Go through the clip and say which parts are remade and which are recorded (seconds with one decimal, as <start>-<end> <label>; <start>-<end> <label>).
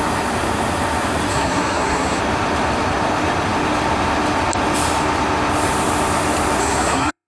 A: 0.0-1.3 recorded; 1.3-2.2 remade; 2.2-6.6 recorded; 6.6-7.3 remade